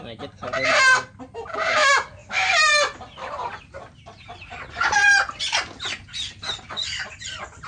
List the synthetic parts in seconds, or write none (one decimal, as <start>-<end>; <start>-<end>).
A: none